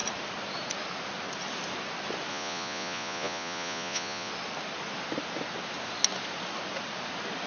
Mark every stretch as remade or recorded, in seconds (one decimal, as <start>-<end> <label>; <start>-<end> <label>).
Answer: 0.0-2.3 recorded; 2.3-4.3 remade; 4.3-7.5 recorded